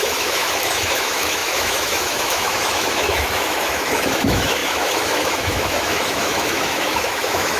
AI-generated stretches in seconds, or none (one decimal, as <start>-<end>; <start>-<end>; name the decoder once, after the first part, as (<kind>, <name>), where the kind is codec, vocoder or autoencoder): 0.0-7.6 (autoencoder, DAC-VAE)